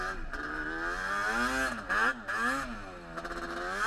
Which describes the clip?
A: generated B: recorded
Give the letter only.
B